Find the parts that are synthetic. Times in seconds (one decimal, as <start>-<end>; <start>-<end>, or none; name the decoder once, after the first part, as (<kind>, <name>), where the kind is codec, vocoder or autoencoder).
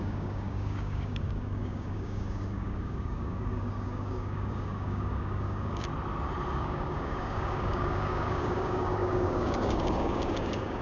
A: 0.0-5.9 (codec, DAC); 6.5-10.8